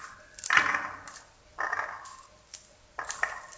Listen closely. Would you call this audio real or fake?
real